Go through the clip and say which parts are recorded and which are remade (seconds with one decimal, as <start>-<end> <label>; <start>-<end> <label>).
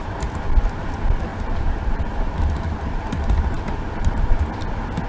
0.0-1.3 recorded; 1.3-4.4 remade; 4.4-5.1 recorded